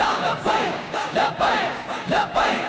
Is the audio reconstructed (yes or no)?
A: yes